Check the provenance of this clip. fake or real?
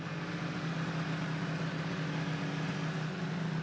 real